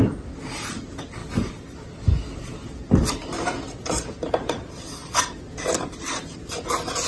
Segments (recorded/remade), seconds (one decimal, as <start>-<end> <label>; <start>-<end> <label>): 0.0-7.1 recorded